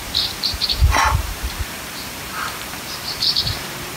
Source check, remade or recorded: remade